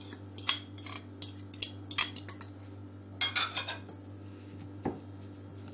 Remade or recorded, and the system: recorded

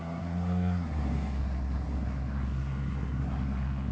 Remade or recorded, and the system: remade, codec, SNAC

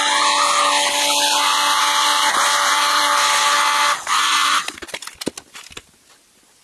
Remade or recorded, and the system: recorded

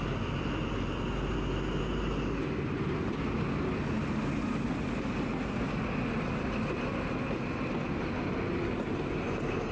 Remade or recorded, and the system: recorded